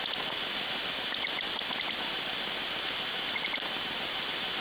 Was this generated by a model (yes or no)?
no